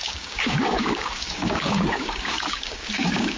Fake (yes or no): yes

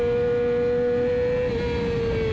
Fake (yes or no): no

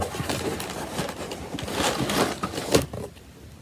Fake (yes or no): no